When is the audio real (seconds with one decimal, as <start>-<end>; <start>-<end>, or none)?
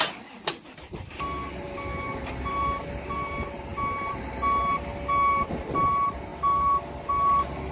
0.0-7.7